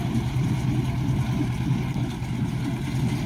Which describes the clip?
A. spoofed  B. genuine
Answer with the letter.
B